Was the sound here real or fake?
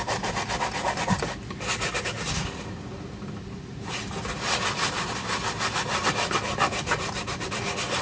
real